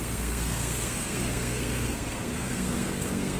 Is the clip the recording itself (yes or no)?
no